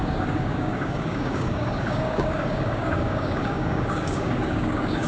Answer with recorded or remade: remade